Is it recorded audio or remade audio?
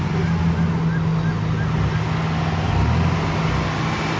recorded